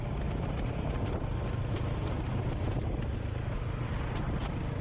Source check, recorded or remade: recorded